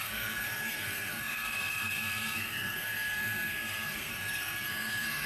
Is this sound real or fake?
fake